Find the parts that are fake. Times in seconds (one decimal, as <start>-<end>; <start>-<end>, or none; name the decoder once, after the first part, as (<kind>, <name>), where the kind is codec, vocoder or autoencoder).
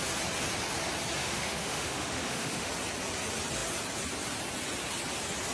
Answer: 1.2-2.7 (autoencoder, DAC-VAE)